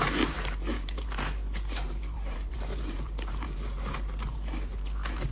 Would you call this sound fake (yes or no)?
yes